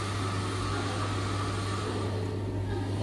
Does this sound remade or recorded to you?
recorded